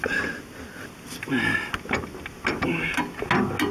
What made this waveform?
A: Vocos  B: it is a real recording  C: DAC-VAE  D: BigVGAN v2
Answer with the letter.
B